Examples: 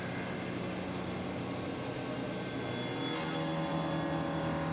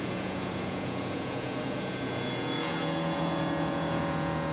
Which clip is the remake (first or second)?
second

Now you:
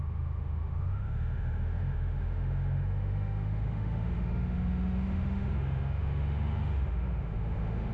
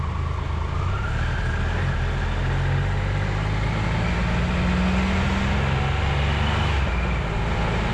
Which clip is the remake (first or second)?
first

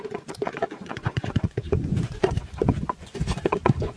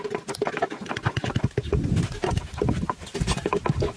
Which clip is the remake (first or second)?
first